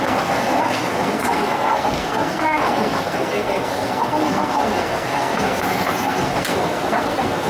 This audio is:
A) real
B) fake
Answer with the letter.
B